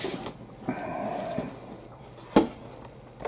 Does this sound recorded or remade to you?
recorded